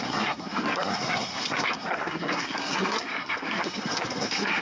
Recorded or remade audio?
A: remade